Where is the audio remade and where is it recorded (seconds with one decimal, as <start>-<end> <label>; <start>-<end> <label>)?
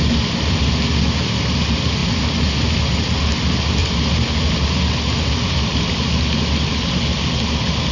0.0-2.0 recorded; 2.0-2.8 remade; 2.8-3.8 recorded; 3.8-6.2 remade; 6.2-7.9 recorded